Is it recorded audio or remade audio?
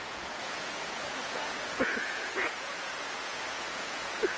remade